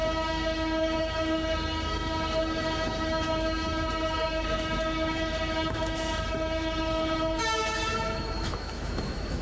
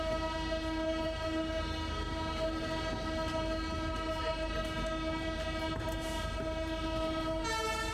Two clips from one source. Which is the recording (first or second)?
second